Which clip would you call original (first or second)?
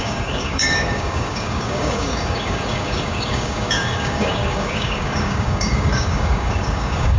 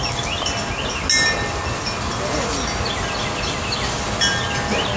second